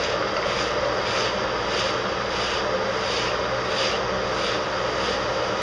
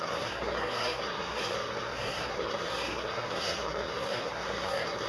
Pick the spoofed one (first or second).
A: second